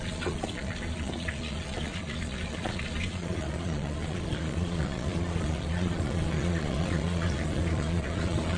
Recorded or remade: remade